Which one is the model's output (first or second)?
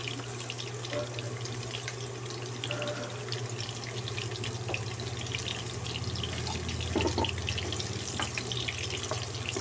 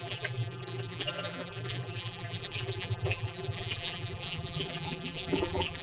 second